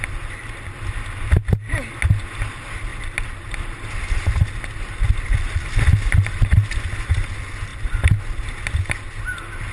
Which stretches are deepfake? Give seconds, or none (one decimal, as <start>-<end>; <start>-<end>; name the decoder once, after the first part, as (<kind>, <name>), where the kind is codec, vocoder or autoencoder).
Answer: none